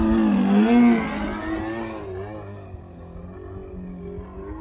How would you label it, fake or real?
real